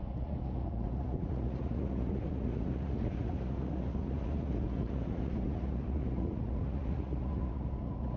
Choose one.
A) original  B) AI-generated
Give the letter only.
B